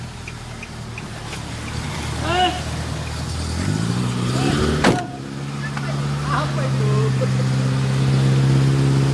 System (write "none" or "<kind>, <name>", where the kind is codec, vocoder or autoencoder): none